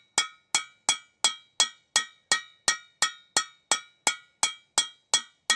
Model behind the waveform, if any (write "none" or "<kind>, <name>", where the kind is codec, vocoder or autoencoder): none